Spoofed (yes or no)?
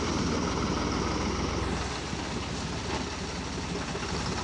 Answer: no